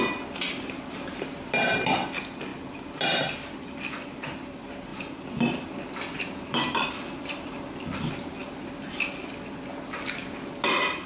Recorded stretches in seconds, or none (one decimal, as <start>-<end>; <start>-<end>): 0.0-11.1